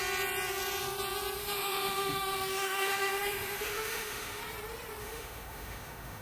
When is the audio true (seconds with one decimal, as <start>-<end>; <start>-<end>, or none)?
0.0-1.4; 4.4-5.0